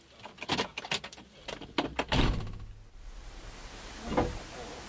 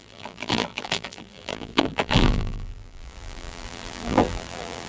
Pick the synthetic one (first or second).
second